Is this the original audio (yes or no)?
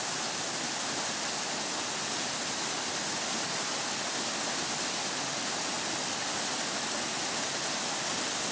yes